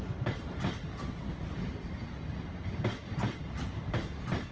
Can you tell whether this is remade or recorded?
recorded